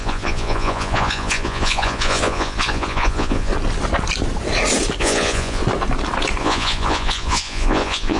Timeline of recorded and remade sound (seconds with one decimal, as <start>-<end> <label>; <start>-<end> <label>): 0.0-3.5 remade; 3.5-5.0 recorded; 5.0-5.6 remade; 5.6-6.4 recorded; 6.4-8.2 remade